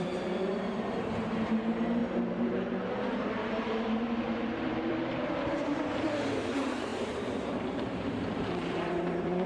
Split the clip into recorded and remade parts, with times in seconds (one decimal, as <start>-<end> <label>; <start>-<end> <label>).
0.0-9.5 remade